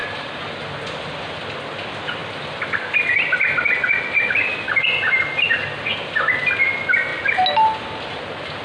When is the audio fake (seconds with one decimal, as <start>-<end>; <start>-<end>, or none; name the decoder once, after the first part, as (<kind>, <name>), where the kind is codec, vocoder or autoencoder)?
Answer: 0.0-0.6 (vocoder, BigVGAN v2)